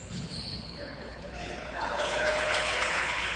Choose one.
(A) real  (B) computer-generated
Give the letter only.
B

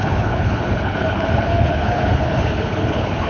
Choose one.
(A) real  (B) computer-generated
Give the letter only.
B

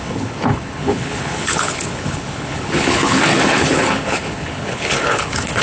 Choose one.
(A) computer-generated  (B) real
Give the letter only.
A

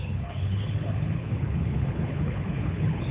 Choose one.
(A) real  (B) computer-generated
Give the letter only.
B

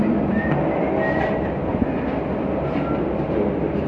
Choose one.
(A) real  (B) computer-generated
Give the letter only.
A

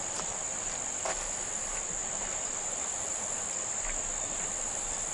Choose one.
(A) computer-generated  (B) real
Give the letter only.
B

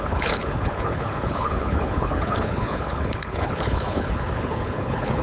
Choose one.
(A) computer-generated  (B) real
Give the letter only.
A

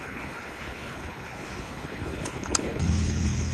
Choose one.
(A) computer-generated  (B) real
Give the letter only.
A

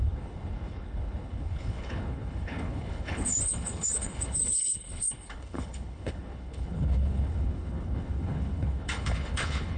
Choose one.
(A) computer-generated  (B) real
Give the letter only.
A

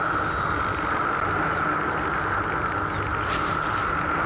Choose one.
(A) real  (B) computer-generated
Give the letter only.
A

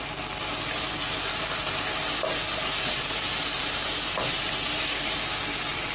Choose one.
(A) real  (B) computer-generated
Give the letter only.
A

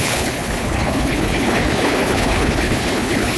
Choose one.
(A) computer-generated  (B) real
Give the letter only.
A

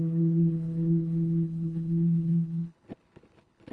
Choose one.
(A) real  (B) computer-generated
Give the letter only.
B